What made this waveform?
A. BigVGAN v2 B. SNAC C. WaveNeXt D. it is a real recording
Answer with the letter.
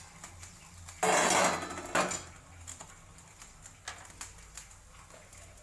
D